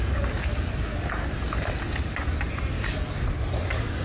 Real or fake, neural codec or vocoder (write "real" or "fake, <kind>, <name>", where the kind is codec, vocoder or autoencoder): real